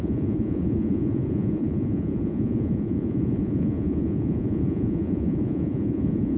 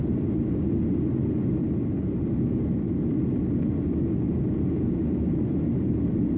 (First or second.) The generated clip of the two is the first